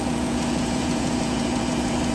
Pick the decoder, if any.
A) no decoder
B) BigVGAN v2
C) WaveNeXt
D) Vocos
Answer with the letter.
D